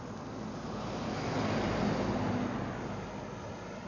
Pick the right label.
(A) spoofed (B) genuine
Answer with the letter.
B